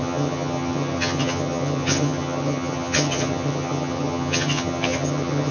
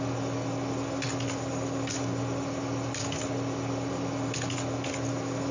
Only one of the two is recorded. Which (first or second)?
second